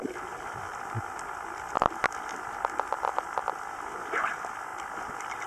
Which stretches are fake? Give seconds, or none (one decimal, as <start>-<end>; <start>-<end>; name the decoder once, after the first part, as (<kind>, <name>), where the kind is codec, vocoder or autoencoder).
0.7-2.0 (vocoder, BigVGAN v2); 4.7-5.5